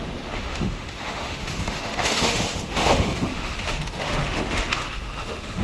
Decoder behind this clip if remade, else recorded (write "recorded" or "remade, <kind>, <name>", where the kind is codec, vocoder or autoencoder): remade, autoencoder, DAC-VAE